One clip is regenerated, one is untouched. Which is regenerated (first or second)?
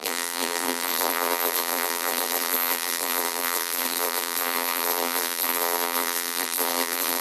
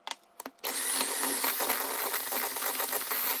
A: first